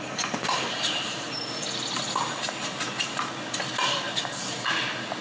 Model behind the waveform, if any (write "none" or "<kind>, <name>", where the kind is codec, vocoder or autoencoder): none